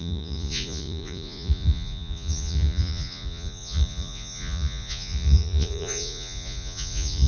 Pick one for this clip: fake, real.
fake